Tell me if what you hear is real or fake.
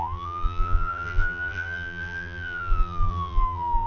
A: fake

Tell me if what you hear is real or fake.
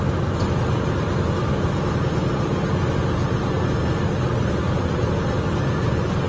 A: real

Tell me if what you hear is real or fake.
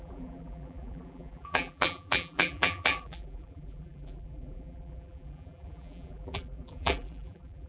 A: fake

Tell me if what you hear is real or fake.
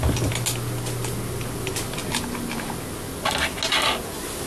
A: real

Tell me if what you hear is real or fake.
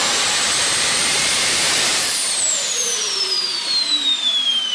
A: fake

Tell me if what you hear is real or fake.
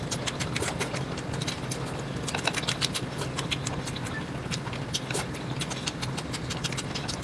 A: real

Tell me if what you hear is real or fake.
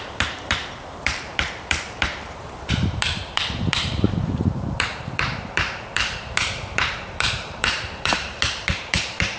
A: fake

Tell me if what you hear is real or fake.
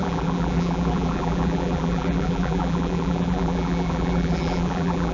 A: fake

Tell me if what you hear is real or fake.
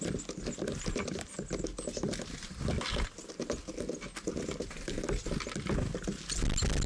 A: real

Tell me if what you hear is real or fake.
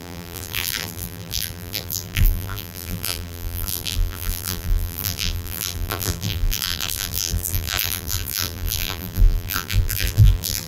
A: fake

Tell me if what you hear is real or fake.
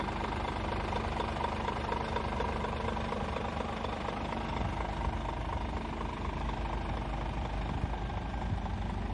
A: real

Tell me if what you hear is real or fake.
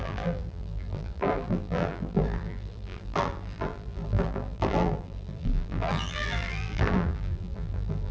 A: fake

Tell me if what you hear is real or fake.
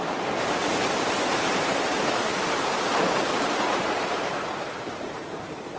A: fake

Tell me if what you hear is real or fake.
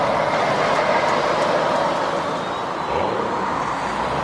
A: real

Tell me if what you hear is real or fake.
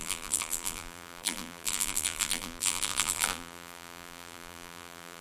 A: fake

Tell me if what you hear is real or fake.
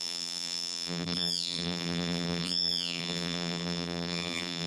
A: fake